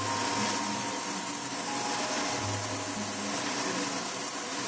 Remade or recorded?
recorded